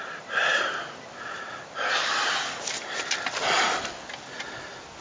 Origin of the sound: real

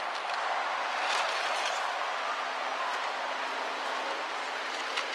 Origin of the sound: real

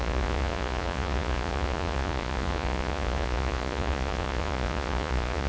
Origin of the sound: fake